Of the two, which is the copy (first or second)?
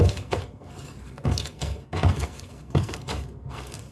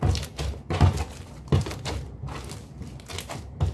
first